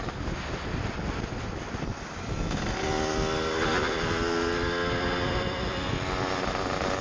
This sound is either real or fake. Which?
real